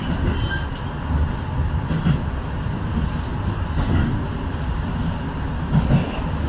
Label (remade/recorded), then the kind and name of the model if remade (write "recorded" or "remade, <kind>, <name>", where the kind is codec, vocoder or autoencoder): recorded